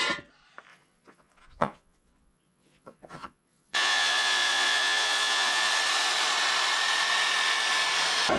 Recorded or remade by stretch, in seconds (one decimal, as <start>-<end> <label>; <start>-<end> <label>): 0.0-0.7 recorded; 0.7-5.7 remade; 5.7-8.4 recorded